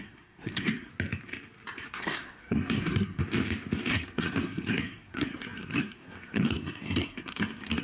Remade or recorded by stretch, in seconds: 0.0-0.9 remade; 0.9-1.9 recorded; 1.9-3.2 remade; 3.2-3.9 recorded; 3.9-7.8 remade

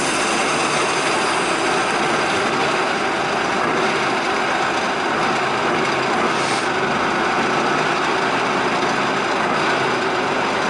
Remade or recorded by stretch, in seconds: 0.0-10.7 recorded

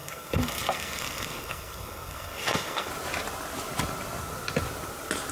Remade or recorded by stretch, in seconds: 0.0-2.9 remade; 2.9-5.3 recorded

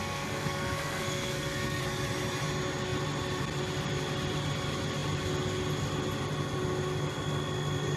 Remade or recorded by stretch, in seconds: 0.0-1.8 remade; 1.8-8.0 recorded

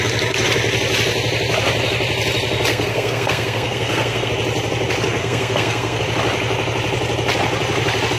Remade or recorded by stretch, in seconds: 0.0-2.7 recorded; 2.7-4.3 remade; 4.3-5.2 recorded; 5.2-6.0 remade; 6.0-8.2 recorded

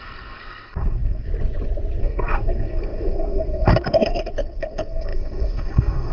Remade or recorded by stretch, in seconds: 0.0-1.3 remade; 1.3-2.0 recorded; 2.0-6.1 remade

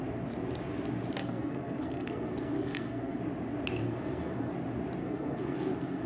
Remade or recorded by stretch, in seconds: 0.0-1.2 recorded; 1.2-3.2 remade; 3.2-3.8 recorded; 3.8-4.5 remade; 4.5-5.0 recorded; 5.0-6.1 remade